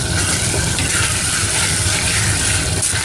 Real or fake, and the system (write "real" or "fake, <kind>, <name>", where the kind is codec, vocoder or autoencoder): real